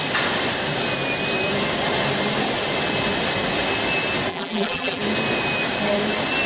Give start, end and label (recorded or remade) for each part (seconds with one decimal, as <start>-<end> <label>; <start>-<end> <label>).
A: 0.0-4.3 recorded; 4.3-5.0 remade; 5.0-6.5 recorded